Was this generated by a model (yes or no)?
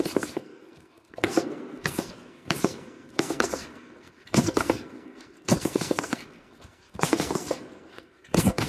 yes